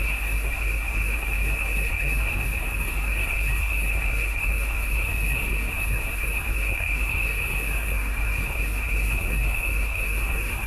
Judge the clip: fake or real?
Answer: fake